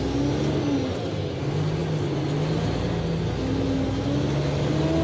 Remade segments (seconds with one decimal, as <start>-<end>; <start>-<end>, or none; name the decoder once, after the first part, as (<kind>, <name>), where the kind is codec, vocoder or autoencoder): none